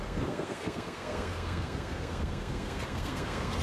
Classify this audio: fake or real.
fake